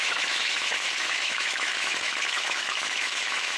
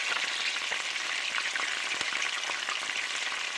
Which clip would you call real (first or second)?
second